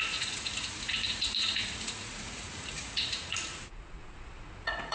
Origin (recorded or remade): remade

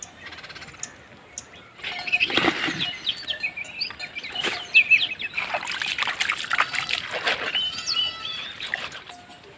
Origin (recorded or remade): recorded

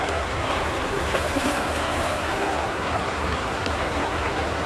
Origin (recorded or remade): remade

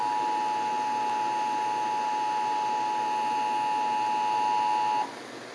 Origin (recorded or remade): recorded